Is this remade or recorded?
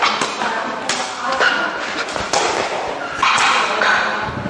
recorded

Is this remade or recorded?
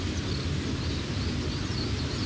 recorded